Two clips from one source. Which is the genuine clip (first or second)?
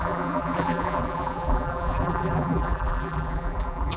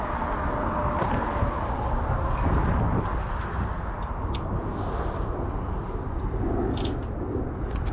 second